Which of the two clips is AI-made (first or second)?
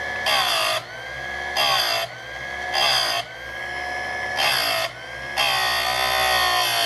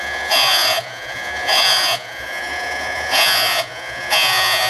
second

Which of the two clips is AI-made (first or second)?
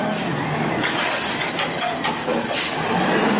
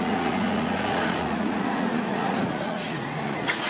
second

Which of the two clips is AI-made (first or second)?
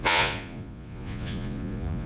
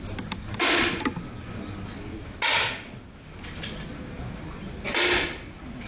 first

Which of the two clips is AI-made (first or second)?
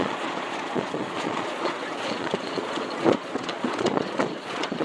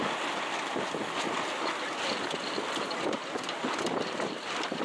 first